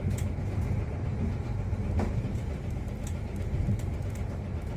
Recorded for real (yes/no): yes